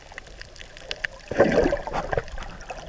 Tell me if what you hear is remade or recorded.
recorded